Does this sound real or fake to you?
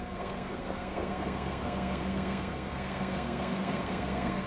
fake